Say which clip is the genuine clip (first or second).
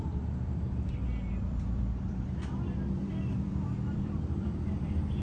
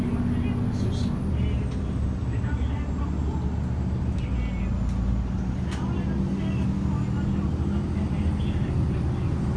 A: second